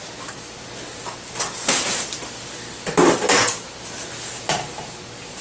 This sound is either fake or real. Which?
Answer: real